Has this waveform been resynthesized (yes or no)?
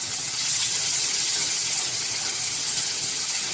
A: yes